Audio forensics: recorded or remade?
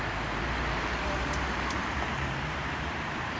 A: remade